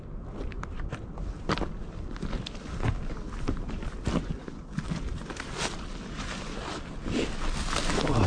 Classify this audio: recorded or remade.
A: recorded